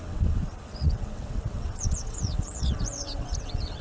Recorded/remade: remade